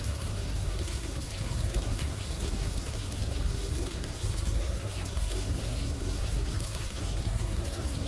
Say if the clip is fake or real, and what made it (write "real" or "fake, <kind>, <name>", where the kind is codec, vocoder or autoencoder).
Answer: fake, codec, SNAC